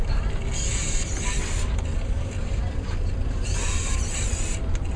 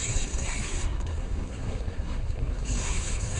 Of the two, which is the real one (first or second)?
first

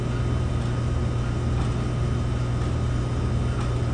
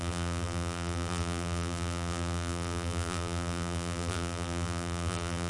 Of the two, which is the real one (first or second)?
first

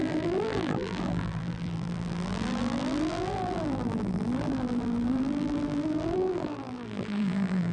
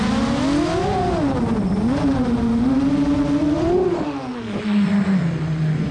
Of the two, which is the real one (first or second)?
second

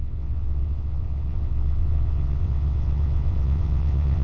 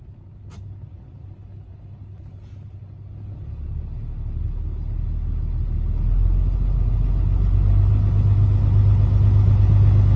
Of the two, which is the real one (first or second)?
second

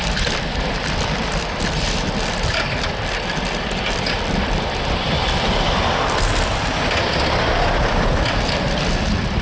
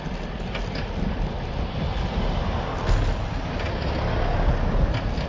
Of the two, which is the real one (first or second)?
second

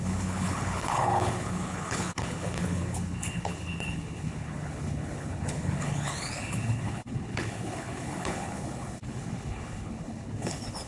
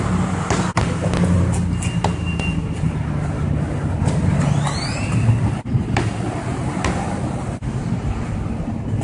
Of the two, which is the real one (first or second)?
second